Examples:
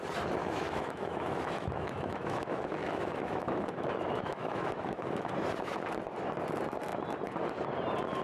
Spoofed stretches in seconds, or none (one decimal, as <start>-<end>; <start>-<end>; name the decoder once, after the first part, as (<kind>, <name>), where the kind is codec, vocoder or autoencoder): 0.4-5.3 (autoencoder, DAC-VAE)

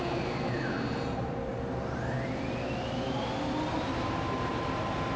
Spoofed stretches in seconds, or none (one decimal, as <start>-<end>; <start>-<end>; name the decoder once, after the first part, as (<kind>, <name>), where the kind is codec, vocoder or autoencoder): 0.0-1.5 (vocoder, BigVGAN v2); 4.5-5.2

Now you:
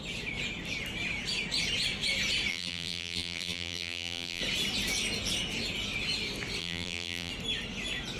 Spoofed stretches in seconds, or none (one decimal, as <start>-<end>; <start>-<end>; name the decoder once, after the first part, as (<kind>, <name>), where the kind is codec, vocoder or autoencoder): 2.5-4.4 (vocoder, BigVGAN v2); 6.6-7.3

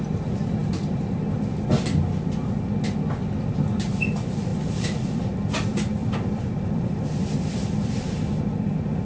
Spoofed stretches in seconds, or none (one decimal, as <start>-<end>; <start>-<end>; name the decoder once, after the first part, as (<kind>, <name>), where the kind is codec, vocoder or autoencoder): 0.6-1.2 (vocoder, BigVGAN v2); 4.5-5.2; 6.0-8.4